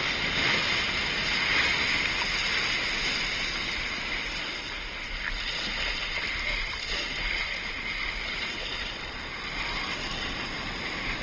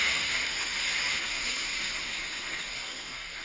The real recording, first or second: first